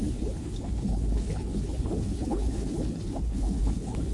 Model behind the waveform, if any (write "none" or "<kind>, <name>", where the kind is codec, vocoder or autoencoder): codec, HILCodec